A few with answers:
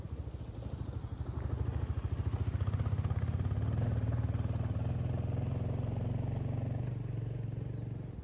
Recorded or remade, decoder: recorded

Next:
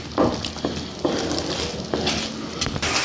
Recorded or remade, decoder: recorded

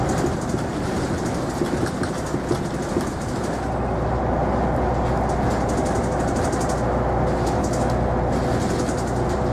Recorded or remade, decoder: recorded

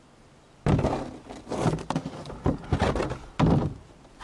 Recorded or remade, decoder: recorded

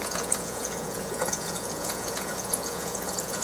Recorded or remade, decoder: remade, vocoder, Vocos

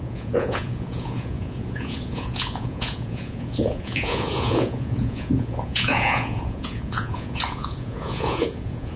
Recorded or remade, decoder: remade, vocoder, Vocos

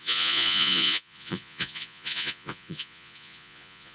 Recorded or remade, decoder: remade, vocoder, Vocos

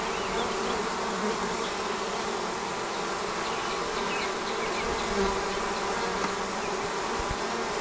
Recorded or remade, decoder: recorded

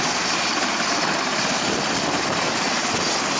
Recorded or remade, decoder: recorded